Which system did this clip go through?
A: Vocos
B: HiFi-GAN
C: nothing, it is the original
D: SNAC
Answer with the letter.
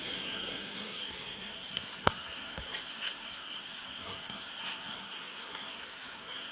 D